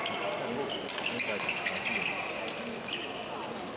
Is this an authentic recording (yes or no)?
yes